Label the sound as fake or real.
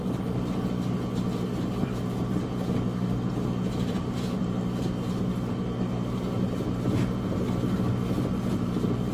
real